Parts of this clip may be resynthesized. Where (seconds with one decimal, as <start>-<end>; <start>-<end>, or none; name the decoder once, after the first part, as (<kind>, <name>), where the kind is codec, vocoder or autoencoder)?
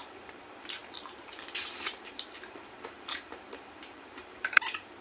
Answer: 0.0-5.0 (vocoder, BigVGAN v2)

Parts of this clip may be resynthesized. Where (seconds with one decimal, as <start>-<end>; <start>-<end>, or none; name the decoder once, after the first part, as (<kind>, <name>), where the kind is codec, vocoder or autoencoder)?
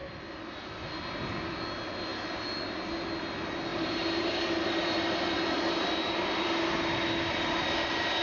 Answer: 3.7-5.3 (vocoder, BigVGAN v2)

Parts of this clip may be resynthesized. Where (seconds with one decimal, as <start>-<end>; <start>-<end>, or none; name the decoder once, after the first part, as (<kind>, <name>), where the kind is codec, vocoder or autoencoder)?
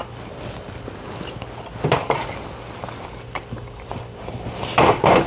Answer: 3.0-5.3 (vocoder, BigVGAN v2)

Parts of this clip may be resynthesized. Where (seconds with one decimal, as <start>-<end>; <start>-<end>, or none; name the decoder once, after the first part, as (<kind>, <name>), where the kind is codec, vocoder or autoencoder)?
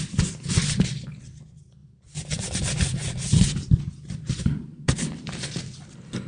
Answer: 1.8-5.3 (vocoder, BigVGAN v2)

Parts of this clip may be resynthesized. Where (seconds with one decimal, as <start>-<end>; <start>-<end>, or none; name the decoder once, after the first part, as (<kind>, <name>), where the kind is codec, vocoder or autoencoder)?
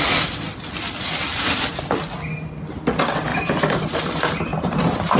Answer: 1.3-2.0 (vocoder, BigVGAN v2); 3.3-4.0; 4.5-5.2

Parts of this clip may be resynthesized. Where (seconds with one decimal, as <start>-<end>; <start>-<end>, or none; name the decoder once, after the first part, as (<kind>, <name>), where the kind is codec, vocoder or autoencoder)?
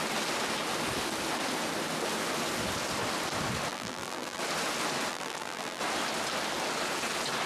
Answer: 3.7-4.4 (vocoder, BigVGAN v2); 5.1-5.8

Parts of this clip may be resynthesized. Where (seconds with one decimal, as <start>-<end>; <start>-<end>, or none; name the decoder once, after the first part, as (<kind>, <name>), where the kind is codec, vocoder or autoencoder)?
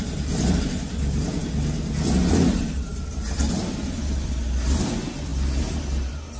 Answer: 0.0-1.4 (vocoder, BigVGAN v2); 2.3-5.3